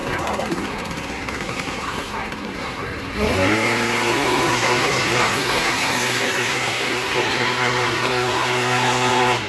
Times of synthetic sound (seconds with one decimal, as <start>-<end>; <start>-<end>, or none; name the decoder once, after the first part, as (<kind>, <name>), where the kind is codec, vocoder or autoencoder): 0.0-9.5 (codec, SNAC)